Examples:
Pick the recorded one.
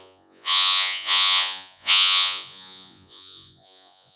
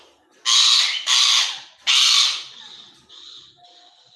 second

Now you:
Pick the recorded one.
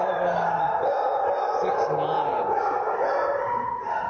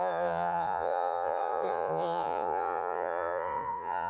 first